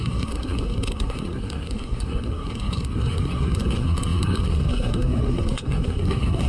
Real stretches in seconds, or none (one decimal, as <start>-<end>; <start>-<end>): none